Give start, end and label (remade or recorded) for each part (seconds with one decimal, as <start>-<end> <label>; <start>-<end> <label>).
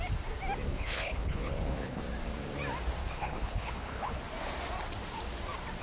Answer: 0.0-0.7 recorded; 0.7-2.0 remade; 2.0-3.0 recorded; 3.0-4.2 remade; 4.2-5.8 recorded